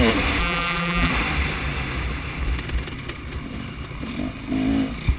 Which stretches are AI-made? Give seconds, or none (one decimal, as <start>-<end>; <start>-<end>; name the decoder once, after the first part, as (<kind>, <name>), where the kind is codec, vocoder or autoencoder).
0.4-1.1 (vocoder, BigVGAN v2)